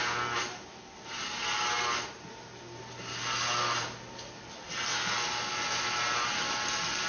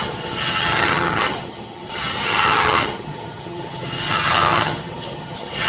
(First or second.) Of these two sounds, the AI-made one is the second